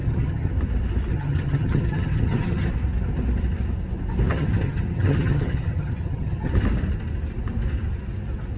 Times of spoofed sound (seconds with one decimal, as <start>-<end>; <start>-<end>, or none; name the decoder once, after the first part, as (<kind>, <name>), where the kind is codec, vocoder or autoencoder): 0.0-0.5 (vocoder, HiFi-GAN); 1.1-2.7; 4.3-6.5